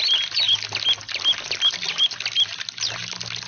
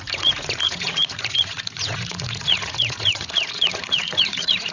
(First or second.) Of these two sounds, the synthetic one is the second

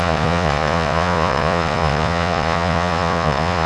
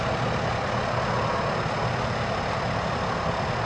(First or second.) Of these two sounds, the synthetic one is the first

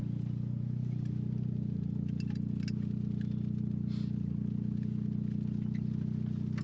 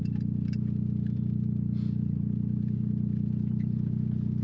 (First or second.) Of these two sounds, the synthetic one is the second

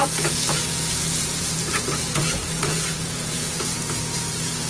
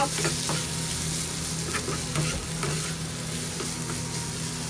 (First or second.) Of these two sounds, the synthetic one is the first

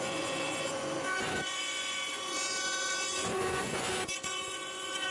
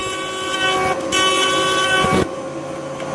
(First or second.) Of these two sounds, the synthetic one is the first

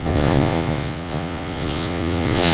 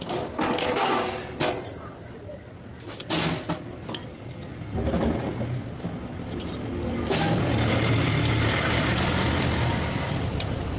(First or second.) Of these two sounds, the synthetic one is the first